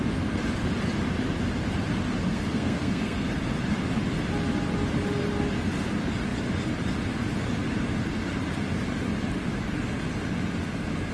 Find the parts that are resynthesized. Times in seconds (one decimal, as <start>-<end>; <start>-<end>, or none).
2.3-3.3